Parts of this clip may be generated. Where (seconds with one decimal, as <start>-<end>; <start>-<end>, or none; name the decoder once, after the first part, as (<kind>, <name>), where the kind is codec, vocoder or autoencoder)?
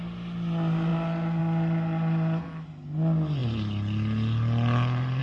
none